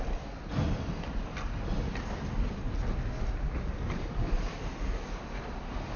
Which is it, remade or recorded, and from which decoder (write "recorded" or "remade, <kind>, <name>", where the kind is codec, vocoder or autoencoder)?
recorded